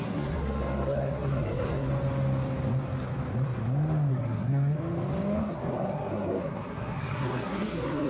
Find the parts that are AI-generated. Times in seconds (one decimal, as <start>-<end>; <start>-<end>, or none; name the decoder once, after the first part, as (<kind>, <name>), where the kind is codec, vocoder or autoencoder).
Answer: 0.0-1.9 (codec, SNAC); 4.1-4.8; 5.4-8.1